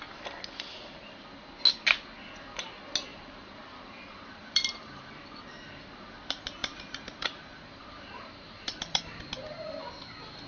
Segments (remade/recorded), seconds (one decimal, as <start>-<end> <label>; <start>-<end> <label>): 0.0-3.1 recorded; 3.1-5.2 remade; 5.2-6.6 recorded; 6.6-9.0 remade; 9.0-10.5 recorded

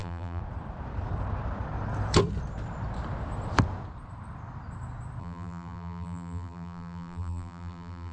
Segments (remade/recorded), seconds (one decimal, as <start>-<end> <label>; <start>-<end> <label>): 0.0-0.4 remade; 0.4-5.2 recorded; 5.2-8.1 remade

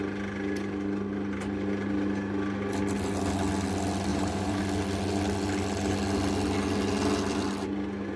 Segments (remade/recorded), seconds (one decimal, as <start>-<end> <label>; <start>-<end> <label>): 0.0-4.1 recorded; 4.1-4.6 remade; 4.6-8.2 recorded